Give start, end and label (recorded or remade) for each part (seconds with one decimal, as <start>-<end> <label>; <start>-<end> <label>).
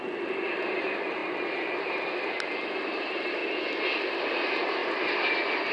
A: 0.0-5.7 recorded